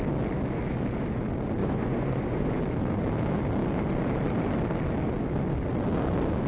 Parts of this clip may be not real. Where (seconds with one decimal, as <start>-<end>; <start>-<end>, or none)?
1.6-2.5